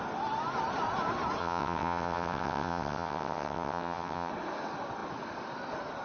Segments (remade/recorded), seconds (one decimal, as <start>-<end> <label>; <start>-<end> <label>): 0.0-1.4 recorded; 1.4-4.3 remade; 4.3-6.0 recorded